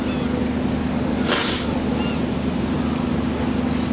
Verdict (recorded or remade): recorded